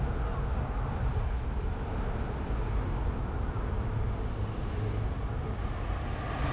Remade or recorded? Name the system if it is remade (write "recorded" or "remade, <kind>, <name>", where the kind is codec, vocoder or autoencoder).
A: recorded